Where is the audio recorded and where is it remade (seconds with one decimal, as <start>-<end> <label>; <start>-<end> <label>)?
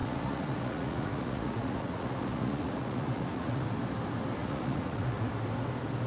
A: 0.0-3.7 remade; 3.7-4.4 recorded; 4.4-5.3 remade; 5.3-6.1 recorded